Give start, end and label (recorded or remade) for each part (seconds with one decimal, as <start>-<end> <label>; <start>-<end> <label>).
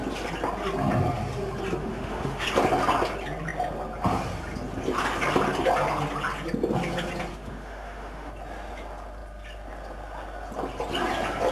0.0-1.8 recorded; 1.8-2.4 remade; 2.4-7.3 recorded; 7.3-8.3 remade; 8.3-11.5 recorded